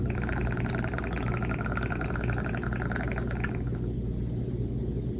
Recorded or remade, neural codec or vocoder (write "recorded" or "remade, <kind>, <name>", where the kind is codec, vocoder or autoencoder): recorded